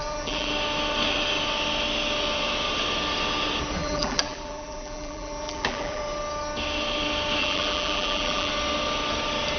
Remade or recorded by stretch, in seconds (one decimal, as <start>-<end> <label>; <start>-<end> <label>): 0.0-0.5 remade; 0.5-3.8 recorded; 3.8-6.0 remade; 6.0-7.4 recorded; 7.4-8.5 remade; 8.5-9.6 recorded